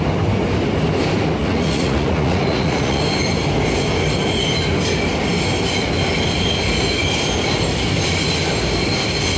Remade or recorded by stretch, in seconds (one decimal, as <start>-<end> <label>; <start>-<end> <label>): 0.0-1.4 recorded; 1.4-3.0 remade; 3.0-9.4 recorded